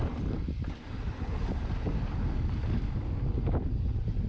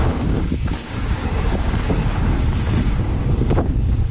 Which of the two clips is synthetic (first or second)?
second